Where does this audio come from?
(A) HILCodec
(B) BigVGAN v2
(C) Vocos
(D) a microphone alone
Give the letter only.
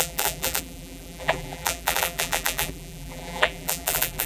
B